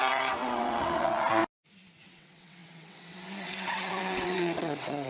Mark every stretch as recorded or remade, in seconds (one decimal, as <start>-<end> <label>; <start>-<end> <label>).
0.0-1.4 remade; 1.4-2.0 recorded; 2.0-5.1 remade